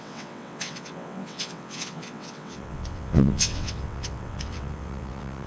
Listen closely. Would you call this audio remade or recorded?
remade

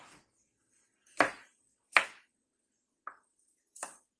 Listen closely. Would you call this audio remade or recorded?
remade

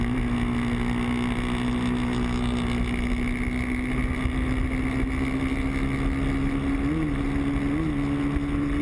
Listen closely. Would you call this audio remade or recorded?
recorded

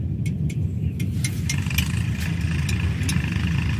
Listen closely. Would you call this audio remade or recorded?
recorded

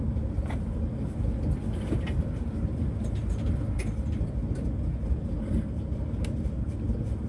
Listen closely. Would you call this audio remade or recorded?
recorded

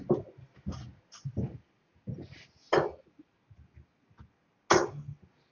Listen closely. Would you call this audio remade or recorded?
recorded